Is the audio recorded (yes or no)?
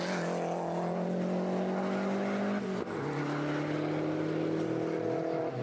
yes